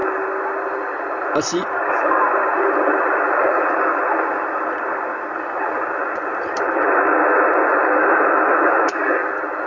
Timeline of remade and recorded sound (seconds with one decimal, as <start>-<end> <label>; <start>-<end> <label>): 0.0-8.0 recorded; 8.0-9.0 remade; 9.0-9.7 recorded